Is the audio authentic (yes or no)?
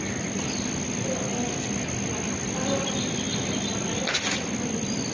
yes